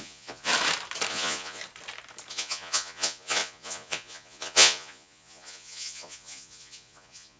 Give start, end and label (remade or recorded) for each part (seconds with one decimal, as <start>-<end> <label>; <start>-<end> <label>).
0.0-0.5 remade; 0.5-1.1 recorded; 1.1-1.6 remade; 1.6-2.3 recorded; 2.3-7.4 remade